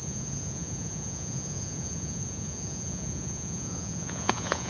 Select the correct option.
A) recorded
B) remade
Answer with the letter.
B